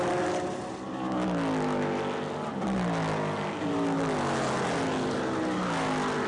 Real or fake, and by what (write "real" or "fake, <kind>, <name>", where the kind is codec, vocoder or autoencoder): real